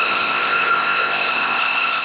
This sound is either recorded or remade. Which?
remade